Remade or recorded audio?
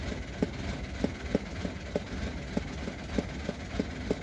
recorded